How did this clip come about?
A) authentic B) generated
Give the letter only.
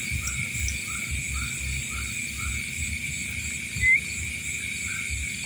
A